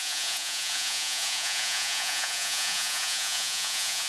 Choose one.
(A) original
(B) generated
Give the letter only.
B